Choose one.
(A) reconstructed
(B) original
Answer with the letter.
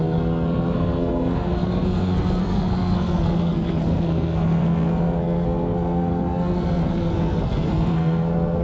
A